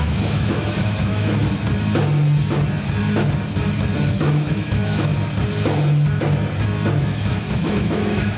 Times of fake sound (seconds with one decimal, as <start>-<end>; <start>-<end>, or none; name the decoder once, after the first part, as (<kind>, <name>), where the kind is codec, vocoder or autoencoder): 0.0-1.4 (autoencoder, DAC-VAE); 4.1-5.1; 7.0-8.4